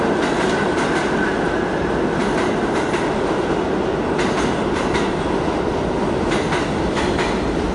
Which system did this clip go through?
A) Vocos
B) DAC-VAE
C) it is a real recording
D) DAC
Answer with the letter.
C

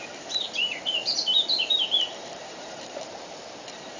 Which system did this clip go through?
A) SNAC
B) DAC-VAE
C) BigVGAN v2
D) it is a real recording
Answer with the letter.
C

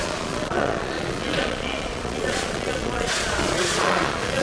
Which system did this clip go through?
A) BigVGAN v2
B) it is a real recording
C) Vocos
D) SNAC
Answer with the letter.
C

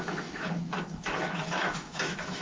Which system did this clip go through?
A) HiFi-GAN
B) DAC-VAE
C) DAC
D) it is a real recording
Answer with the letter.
B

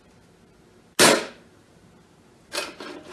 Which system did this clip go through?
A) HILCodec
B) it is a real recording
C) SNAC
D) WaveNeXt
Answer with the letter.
B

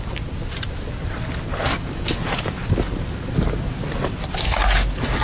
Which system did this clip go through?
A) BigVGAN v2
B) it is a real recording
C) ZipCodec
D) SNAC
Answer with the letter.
B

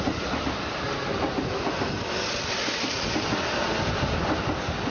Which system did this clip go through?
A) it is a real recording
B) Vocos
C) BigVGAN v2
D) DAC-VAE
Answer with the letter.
A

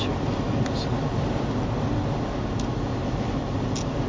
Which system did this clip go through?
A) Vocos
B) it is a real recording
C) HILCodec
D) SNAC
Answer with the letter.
B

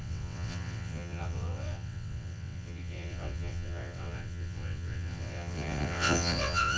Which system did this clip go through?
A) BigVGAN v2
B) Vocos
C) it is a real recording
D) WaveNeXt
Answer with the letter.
D